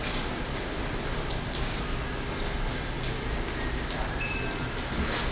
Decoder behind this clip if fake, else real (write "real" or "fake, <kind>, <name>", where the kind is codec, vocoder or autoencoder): real